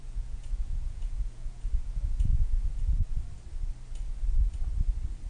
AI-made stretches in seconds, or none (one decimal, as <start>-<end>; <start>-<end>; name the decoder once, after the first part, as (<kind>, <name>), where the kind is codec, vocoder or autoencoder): 0.0-2.9 (vocoder, Vocos)